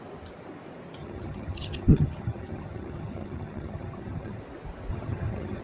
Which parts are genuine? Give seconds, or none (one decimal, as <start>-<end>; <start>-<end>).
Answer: 0.0-1.0; 4.4-4.9